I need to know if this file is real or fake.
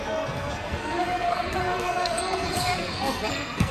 fake